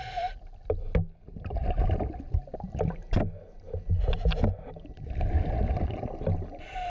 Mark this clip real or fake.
real